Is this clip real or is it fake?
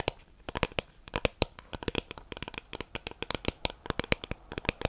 real